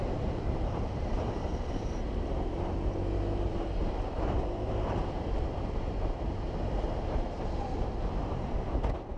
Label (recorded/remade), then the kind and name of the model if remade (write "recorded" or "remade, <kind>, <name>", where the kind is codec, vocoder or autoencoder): remade, vocoder, BigVGAN v2